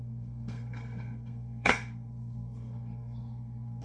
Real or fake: fake